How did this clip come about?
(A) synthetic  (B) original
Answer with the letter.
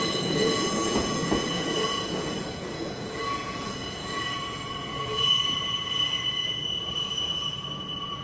A